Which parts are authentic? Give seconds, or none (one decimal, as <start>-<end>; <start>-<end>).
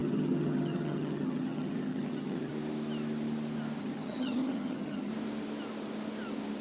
2.5-3.8; 5.1-6.6